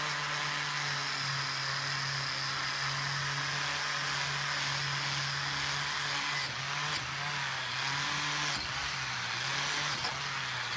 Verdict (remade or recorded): recorded